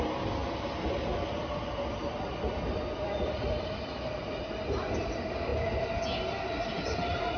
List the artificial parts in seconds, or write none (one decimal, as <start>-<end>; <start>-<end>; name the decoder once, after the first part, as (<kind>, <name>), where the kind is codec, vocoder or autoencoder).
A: none